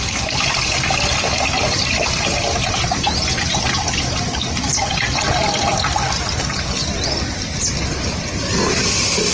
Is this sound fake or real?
fake